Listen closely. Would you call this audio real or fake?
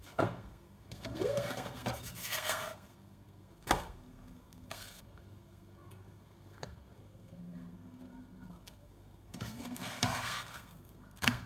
fake